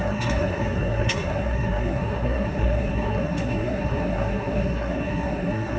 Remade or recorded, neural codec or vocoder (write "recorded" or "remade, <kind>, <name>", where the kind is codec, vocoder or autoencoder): remade, codec, SNAC